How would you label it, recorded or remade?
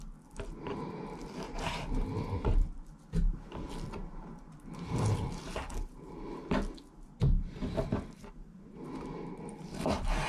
recorded